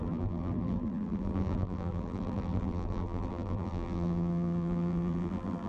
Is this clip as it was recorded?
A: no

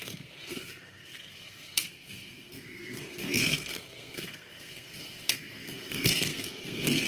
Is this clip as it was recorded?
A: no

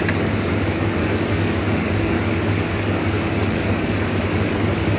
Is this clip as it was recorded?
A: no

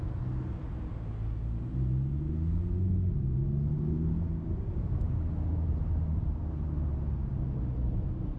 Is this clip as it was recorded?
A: yes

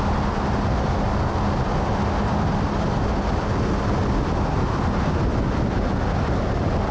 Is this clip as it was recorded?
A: yes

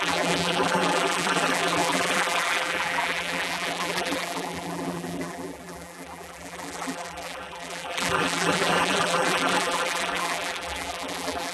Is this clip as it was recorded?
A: no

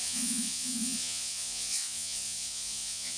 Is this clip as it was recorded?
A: no